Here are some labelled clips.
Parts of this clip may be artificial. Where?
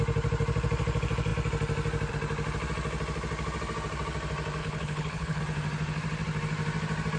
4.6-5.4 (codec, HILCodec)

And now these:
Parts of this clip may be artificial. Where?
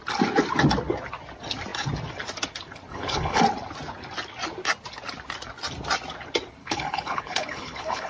2.9-3.4 (codec, HILCodec); 6.6-8.1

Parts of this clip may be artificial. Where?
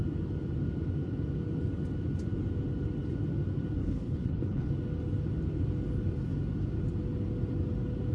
3.8-4.7 (codec, HILCodec)